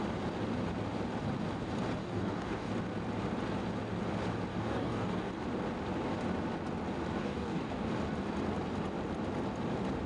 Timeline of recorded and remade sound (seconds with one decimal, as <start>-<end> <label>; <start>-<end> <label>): 0.0-2.0 recorded; 2.0-2.7 remade; 2.7-4.5 recorded; 4.5-5.3 remade; 5.3-7.2 recorded; 7.2-7.9 remade; 7.9-10.1 recorded